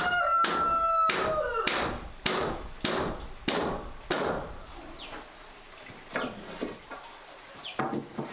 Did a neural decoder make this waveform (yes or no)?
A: no